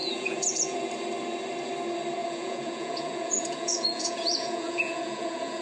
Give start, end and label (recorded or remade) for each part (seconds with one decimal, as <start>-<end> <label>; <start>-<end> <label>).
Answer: 0.0-0.9 remade; 0.9-2.2 recorded; 2.2-5.6 remade